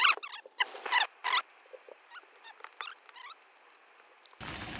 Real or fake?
real